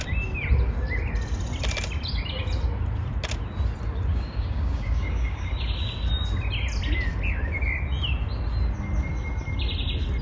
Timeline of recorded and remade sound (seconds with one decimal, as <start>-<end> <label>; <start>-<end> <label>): 0.0-4.1 recorded; 4.1-5.5 remade; 5.5-10.2 recorded